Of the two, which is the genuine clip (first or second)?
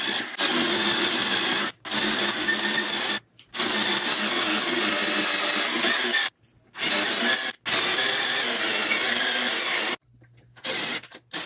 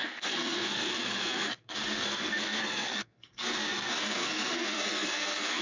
first